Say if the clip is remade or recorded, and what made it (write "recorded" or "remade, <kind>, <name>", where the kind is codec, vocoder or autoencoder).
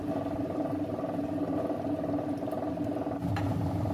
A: recorded